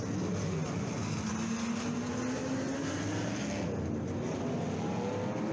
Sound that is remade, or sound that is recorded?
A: recorded